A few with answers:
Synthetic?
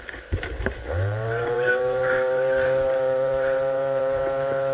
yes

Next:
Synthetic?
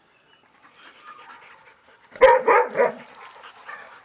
no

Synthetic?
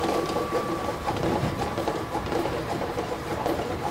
yes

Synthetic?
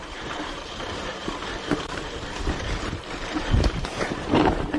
yes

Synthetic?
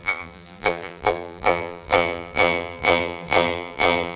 yes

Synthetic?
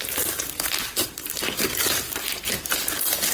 yes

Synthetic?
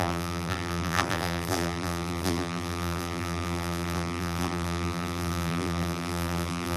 yes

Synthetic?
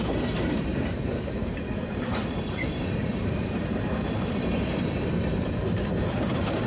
yes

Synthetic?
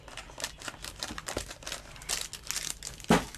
no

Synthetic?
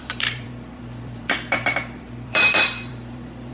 yes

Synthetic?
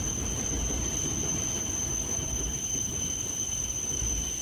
yes